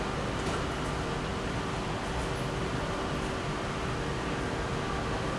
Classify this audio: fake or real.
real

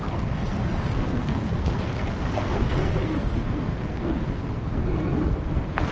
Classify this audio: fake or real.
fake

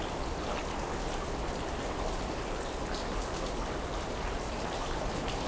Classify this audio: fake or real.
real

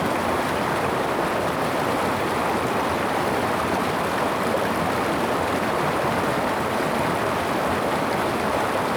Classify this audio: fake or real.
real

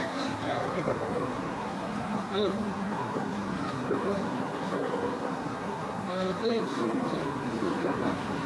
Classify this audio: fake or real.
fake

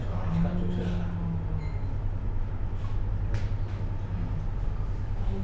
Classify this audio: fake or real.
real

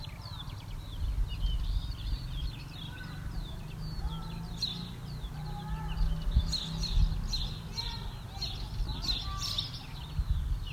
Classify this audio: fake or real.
real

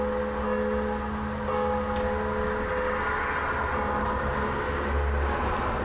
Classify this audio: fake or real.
real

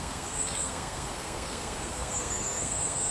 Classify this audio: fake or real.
fake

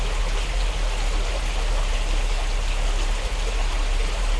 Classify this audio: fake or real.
real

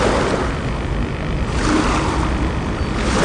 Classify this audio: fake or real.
real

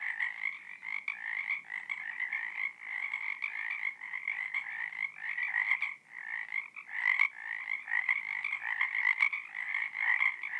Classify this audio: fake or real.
real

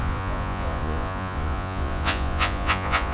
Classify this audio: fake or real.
fake